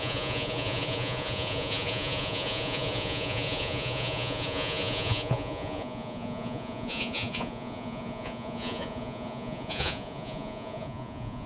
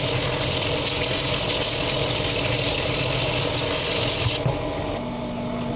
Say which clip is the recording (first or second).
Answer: second